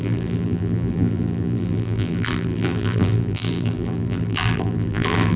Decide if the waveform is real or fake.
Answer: fake